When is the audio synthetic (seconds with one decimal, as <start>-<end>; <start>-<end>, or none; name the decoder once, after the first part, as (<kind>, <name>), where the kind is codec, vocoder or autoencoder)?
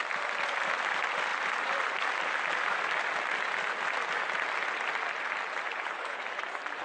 5.7-6.2 (codec, HILCodec)